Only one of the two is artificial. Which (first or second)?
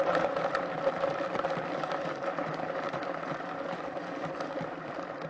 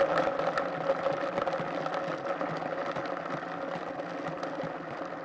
first